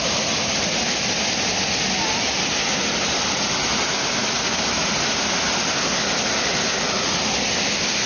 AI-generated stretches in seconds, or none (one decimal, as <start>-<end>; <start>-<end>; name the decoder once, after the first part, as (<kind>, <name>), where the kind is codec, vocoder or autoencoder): none